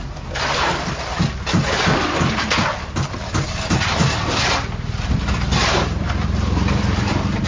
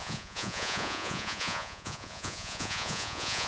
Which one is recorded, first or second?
first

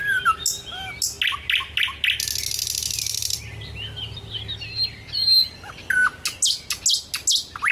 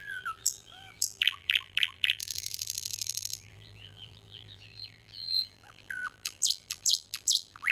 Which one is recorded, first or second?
first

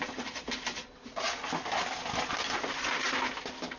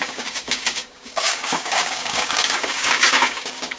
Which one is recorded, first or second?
first